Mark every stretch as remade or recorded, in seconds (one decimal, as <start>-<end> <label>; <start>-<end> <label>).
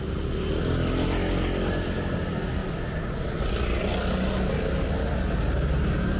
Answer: 0.0-6.2 recorded